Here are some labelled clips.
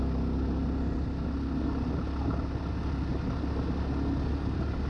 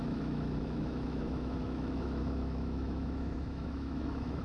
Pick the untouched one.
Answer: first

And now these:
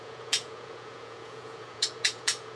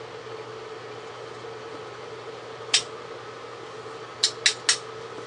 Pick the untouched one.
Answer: second